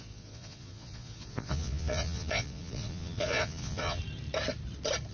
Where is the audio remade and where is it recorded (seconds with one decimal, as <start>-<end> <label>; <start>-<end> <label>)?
0.0-4.0 remade; 4.0-5.1 recorded